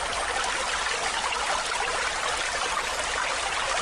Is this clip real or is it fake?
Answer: real